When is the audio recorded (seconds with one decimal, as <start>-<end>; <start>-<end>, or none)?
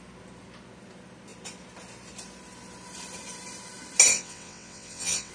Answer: 0.0-4.1